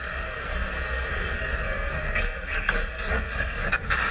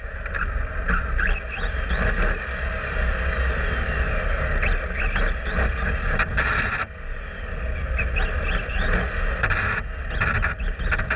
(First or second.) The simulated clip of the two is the first